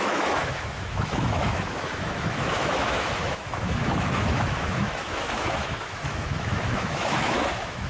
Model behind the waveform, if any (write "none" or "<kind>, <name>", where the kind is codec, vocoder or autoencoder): autoencoder, DAC-VAE